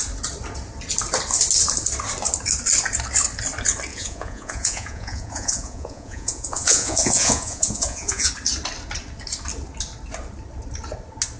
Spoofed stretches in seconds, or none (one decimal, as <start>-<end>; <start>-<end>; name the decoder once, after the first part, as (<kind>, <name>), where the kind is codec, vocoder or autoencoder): 3.9-8.3 (vocoder, Vocos)